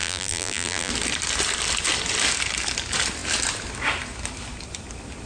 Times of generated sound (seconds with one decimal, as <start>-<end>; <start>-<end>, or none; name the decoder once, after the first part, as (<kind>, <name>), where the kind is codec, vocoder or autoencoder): 0.0-0.9 (vocoder, BigVGAN v2)